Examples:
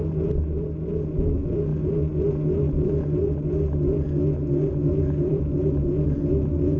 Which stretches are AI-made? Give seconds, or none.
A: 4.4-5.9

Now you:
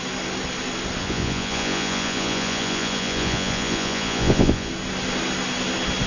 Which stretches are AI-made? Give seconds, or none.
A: 1.0-4.7

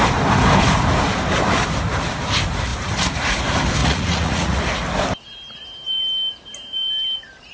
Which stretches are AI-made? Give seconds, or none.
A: 3.8-4.6

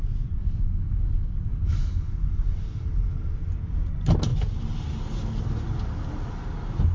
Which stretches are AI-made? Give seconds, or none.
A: 0.4-2.0

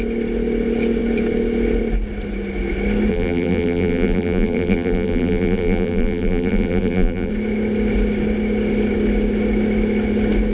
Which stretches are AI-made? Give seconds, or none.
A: 3.1-7.3